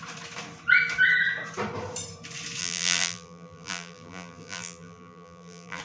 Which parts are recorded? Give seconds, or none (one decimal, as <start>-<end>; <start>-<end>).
0.0-2.6